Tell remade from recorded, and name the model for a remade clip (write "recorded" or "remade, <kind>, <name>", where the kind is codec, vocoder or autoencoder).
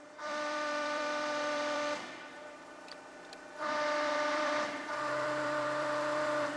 remade, vocoder, BigVGAN v2